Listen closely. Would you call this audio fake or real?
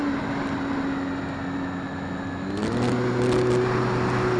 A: real